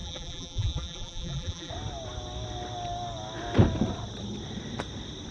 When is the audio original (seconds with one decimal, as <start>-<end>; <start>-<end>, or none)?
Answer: 1.7-5.3